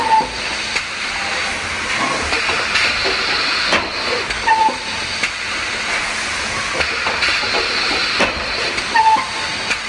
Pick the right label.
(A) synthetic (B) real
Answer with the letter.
B